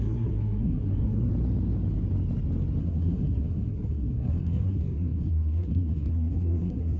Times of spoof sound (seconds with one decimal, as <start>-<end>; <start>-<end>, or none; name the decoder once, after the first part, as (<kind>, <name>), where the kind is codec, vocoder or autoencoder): 0.0-1.3 (codec, SNAC); 2.8-7.0